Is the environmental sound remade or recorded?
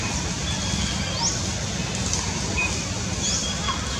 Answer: recorded